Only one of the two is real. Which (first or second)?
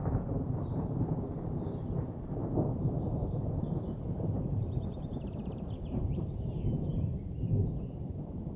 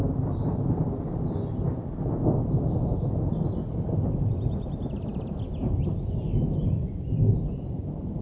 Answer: second